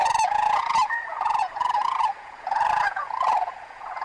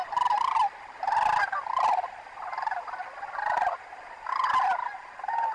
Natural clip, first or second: second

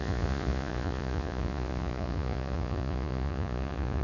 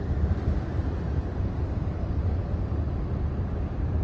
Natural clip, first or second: second